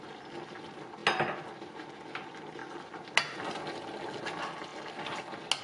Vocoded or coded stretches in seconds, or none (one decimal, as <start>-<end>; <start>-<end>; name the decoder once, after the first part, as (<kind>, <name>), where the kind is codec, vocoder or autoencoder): none